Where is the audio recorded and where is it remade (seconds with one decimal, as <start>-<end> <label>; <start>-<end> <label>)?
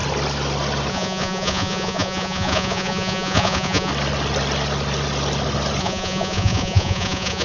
0.0-0.9 recorded; 0.9-3.9 remade; 3.9-5.8 recorded; 5.8-7.4 remade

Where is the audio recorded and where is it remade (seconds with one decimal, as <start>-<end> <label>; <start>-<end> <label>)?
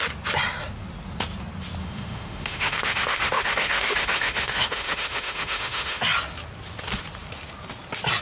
0.0-1.8 recorded; 1.8-6.0 remade; 6.0-8.2 recorded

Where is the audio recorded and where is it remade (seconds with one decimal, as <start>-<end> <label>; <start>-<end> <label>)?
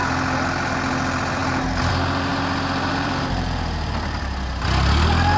0.0-0.7 remade; 0.7-1.4 recorded; 1.4-1.9 remade; 1.9-2.3 recorded; 2.3-4.2 remade; 4.2-5.4 recorded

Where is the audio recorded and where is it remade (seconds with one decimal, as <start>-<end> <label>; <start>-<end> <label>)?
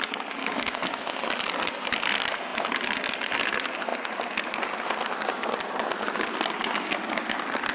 0.0-0.4 recorded; 0.4-1.2 remade; 1.2-7.7 recorded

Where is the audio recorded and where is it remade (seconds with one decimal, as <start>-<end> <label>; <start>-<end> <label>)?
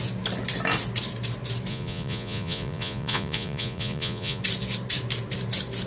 0.0-1.7 recorded; 1.7-4.4 remade; 4.4-5.9 recorded